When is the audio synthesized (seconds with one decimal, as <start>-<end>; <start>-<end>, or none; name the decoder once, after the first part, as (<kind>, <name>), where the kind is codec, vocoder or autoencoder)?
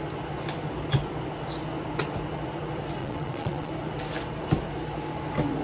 3.0-3.7 (vocoder, Vocos)